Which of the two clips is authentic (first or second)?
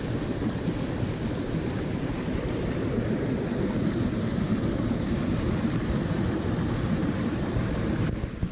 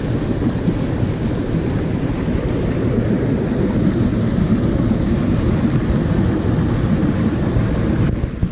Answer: second